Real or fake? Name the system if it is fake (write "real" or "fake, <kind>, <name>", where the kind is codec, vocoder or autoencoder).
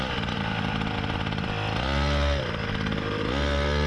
real